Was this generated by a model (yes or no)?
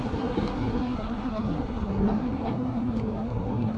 yes